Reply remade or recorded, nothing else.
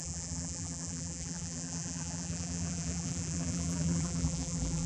remade